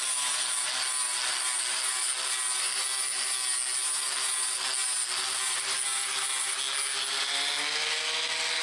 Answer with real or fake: real